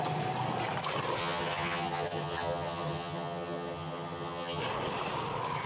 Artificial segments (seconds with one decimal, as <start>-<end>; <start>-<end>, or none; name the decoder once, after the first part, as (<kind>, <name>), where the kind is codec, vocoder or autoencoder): 1.2-4.6 (vocoder, HiFi-GAN)